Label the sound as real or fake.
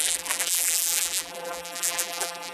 fake